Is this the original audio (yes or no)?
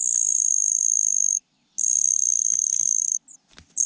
yes